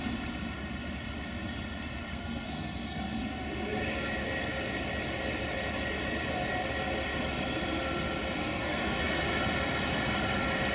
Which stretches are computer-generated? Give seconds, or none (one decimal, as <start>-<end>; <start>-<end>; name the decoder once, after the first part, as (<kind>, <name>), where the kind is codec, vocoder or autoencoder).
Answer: 2.1-3.0 (codec, SNAC); 8.4-9.2